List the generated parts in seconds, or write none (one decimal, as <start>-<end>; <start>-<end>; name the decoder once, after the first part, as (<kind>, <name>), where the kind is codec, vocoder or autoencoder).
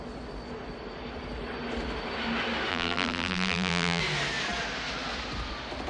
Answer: 2.7-4.0 (vocoder, BigVGAN v2)